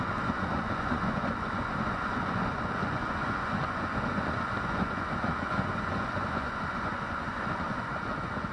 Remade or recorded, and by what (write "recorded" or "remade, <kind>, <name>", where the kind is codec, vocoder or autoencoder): remade, vocoder, Vocos